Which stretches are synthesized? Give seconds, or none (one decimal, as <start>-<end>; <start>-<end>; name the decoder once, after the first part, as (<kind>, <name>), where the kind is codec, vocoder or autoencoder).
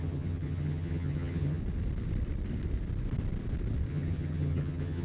0.0-1.6 (vocoder, HiFi-GAN); 3.9-5.0